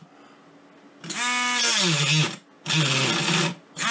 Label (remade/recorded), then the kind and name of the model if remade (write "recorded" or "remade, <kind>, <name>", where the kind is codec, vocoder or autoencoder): recorded